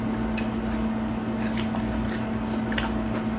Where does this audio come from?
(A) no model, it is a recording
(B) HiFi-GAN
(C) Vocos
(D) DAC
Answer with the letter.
A